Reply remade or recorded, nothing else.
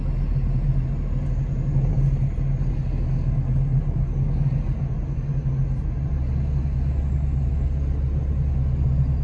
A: recorded